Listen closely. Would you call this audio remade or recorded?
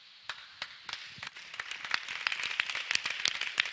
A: recorded